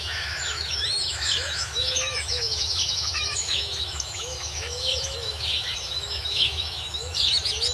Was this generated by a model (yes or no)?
yes